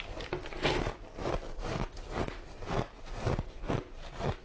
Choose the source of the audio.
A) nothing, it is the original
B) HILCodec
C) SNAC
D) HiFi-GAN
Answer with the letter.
A